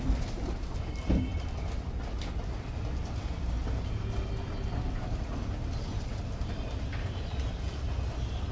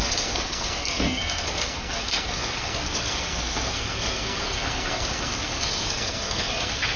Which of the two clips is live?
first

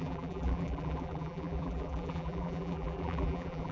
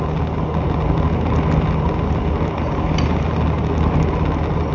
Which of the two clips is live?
second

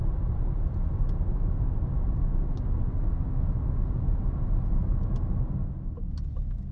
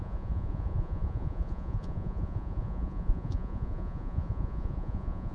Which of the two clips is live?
first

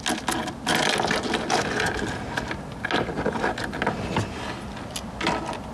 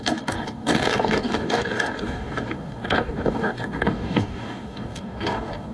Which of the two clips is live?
first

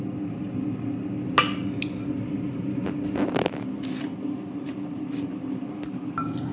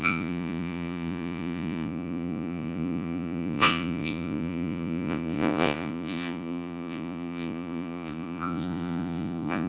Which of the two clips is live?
first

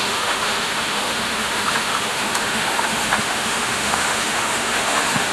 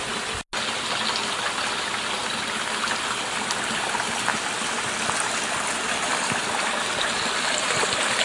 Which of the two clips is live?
second